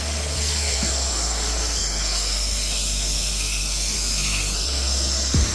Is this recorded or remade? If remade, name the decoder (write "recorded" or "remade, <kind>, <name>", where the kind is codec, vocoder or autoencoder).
remade, codec, SNAC